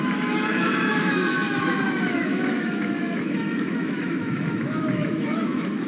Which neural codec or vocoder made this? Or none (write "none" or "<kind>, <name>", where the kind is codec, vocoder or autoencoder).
autoencoder, DAC-VAE